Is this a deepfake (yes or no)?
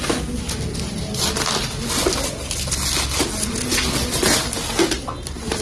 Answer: no